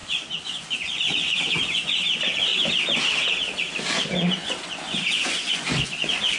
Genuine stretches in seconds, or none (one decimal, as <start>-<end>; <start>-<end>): 2.5-3.9